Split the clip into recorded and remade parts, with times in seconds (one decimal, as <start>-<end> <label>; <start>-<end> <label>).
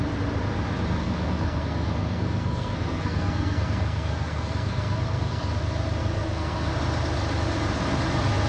0.0-1.0 recorded; 1.0-5.5 remade; 5.5-6.0 recorded; 6.0-6.7 remade; 6.7-8.5 recorded